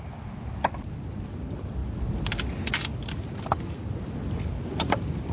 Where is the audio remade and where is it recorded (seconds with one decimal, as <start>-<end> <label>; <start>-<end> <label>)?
0.0-5.3 recorded